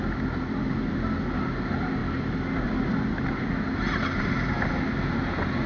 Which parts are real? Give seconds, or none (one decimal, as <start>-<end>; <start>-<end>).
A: 0.0-5.7